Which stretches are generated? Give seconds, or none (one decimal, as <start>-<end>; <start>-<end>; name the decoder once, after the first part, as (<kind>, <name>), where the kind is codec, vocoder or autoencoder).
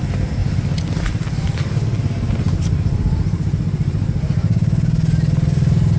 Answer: none